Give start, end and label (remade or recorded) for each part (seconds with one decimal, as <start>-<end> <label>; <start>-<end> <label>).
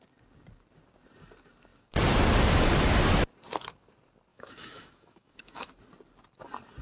0.0-4.3 recorded; 4.3-5.7 remade; 5.7-6.8 recorded